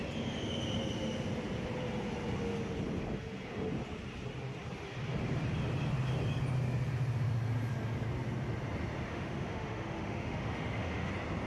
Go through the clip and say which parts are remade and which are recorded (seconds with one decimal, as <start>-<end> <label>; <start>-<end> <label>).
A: 0.0-9.1 recorded; 9.1-11.1 remade; 11.1-11.5 recorded